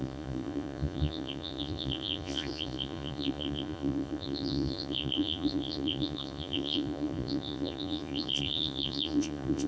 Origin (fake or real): fake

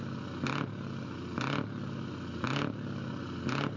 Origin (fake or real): real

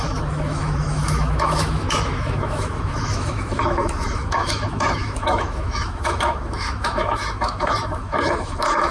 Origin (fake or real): fake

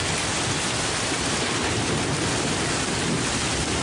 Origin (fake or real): real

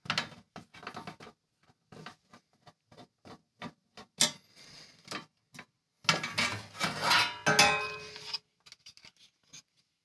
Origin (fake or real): real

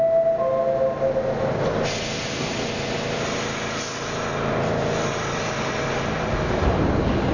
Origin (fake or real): real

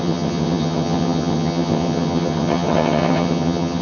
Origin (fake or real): fake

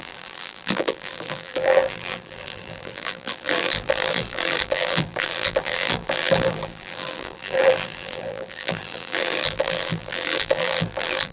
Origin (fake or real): fake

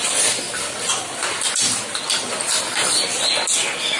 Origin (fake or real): real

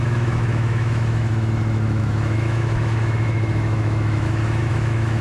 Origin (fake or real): fake